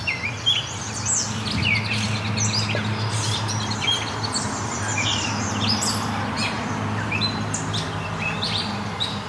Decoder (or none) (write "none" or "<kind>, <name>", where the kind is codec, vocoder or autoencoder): none